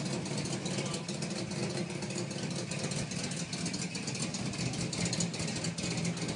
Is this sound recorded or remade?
recorded